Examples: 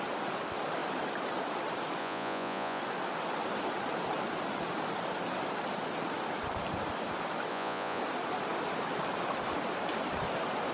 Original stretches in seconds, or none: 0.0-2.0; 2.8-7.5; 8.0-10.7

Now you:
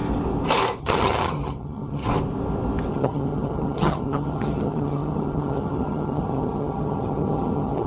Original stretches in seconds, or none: 0.0-0.8; 2.0-2.9